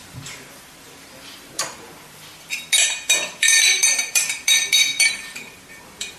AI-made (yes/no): yes